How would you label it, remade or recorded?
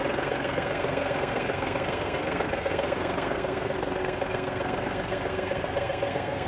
remade